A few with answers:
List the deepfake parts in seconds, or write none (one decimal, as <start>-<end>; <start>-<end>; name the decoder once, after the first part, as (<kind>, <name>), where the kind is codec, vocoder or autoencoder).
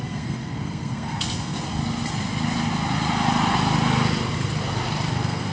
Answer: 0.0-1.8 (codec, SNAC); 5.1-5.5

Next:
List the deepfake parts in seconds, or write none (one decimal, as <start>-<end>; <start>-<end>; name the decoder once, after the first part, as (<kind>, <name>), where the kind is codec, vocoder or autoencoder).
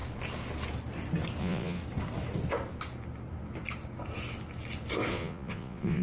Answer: 1.4-1.8 (vocoder, Vocos); 5.1-6.0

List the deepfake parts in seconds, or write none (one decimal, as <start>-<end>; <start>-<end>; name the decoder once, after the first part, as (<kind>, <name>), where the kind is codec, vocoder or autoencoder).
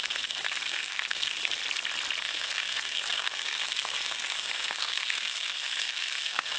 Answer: 0.0-1.6 (codec, SNAC); 2.2-6.6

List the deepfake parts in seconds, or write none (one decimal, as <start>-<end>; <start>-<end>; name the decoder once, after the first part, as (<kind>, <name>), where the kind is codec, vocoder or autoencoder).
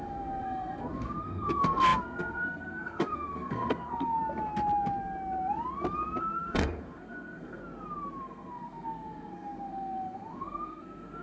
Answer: 0.0-4.2 (codec, SNAC); 6.2-7.6; 8.2-11.2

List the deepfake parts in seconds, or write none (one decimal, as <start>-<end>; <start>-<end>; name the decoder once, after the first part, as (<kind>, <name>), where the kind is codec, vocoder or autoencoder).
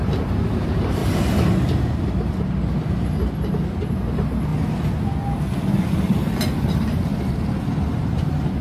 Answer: 0.0-1.0 (vocoder, BigVGAN v2); 3.9-4.5; 5.8-7.1; 8.0-8.6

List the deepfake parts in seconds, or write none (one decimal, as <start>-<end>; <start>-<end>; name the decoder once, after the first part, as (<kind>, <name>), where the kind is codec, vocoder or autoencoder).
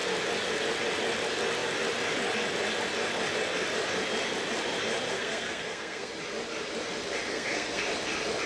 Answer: 5.1-6.1 (codec, SNAC); 7.3-7.8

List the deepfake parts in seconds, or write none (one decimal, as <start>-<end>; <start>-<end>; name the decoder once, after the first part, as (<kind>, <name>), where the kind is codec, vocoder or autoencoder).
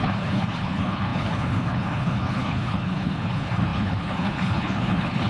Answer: 0.0-5.3 (codec, HILCodec)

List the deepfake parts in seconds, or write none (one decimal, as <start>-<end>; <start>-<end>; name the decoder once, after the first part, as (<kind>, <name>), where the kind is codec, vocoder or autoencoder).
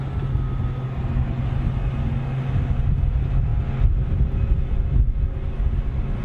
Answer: none